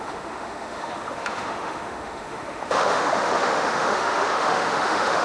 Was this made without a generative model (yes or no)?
no